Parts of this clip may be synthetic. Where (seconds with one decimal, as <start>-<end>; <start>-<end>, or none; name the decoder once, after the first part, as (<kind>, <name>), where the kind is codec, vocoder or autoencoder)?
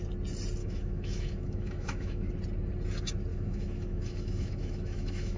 0.6-2.3 (autoencoder, DAC-VAE); 3.3-5.4